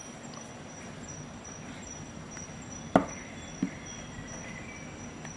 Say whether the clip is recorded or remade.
recorded